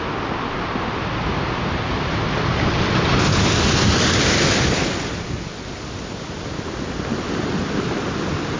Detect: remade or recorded recorded